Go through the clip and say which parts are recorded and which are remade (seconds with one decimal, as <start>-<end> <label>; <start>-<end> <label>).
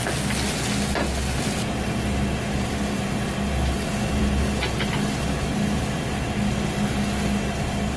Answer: 0.0-8.0 recorded